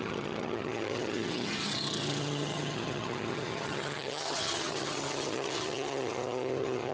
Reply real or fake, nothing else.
fake